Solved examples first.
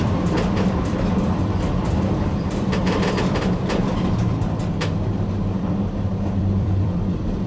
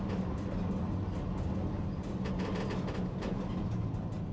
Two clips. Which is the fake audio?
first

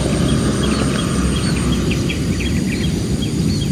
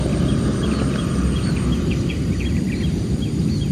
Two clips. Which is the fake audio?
second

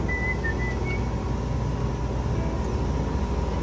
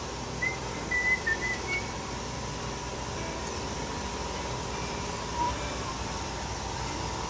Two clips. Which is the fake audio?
second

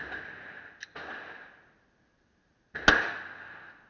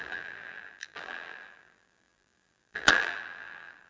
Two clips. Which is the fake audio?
second